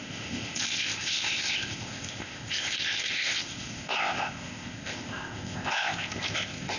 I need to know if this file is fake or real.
fake